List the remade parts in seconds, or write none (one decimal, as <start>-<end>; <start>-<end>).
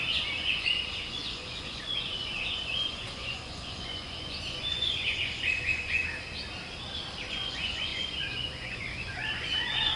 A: 0.0-6.0; 7.3-10.0